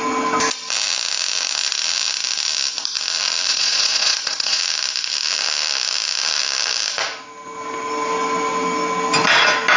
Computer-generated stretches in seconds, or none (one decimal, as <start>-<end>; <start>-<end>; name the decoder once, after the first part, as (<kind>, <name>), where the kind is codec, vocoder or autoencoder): 3.5-4.6 (vocoder, Vocos)